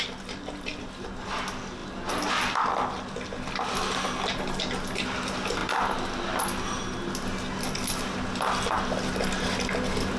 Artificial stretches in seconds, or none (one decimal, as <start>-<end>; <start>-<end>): none